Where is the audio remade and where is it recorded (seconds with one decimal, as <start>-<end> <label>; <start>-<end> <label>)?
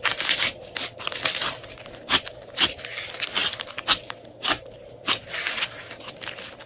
0.0-6.7 recorded